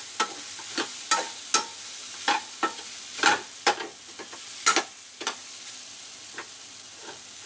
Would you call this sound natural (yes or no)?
yes